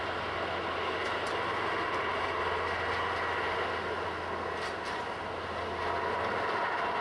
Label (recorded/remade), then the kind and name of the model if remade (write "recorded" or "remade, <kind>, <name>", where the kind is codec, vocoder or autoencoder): recorded